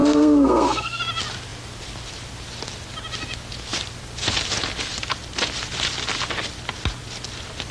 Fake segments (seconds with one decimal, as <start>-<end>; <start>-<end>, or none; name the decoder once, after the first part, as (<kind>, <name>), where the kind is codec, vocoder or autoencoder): 0.0-1.0 (codec, SNAC)

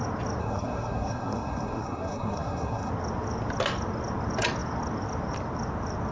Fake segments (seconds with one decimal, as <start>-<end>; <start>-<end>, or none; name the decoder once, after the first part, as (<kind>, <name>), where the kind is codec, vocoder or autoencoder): 0.4-2.9 (codec, SNAC)